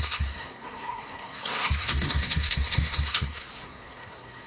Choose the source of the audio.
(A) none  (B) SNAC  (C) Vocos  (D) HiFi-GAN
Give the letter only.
B